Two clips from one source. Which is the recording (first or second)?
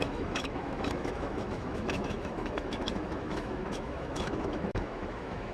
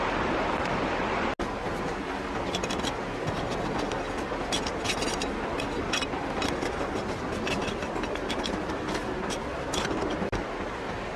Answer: second